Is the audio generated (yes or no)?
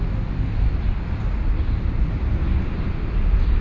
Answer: no